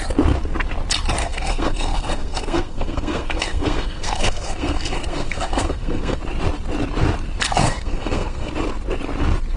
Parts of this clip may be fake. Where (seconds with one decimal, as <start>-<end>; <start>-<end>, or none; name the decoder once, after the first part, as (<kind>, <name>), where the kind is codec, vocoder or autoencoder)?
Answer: 1.2-6.2 (codec, SNAC); 7.6-8.5